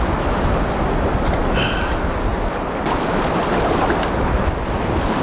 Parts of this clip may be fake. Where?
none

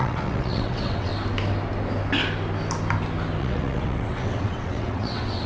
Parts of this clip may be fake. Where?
0.0-1.1 (vocoder, WaveNeXt); 3.4-5.5

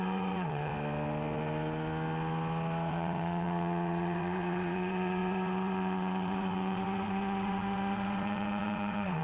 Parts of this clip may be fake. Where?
0.0-0.7 (vocoder, WaveNeXt); 2.9-9.2

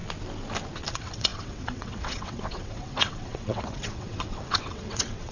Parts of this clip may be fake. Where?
0.9-5.3 (vocoder, WaveNeXt)

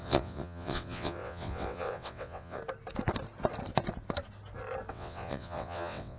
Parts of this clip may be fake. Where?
0.0-2.6 (vocoder, WaveNeXt); 4.9-6.2

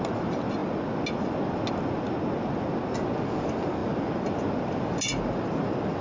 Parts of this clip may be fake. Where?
none

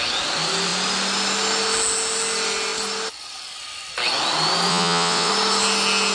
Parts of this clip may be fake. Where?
4.7-5.3 (vocoder, WaveNeXt)

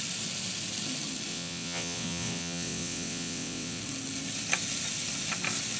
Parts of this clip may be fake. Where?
1.3-3.8 (vocoder, WaveNeXt)